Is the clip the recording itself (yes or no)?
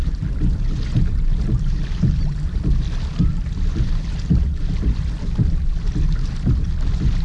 no